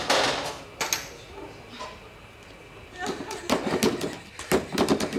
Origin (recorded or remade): recorded